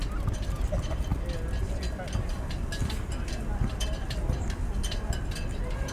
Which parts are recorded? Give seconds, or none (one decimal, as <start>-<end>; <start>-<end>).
0.0-5.9